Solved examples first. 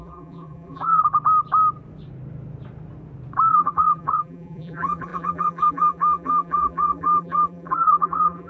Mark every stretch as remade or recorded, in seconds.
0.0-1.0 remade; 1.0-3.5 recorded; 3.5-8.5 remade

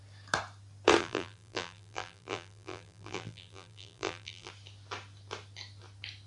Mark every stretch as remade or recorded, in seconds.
0.0-1.0 recorded; 1.0-4.5 remade; 4.5-6.3 recorded

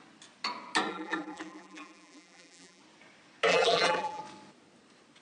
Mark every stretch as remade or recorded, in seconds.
0.0-0.9 recorded; 0.9-2.8 remade; 2.8-3.5 recorded; 3.5-4.2 remade; 4.2-5.2 recorded

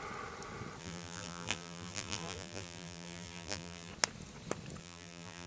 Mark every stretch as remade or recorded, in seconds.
0.0-0.8 recorded; 0.8-3.9 remade; 3.9-4.8 recorded; 4.8-5.5 remade